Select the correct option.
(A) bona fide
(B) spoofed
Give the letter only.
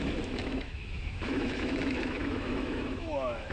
B